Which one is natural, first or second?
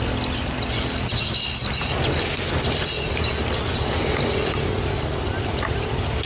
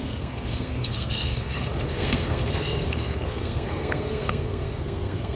first